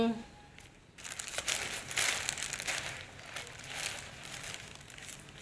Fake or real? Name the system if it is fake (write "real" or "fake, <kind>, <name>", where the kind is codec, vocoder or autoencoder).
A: real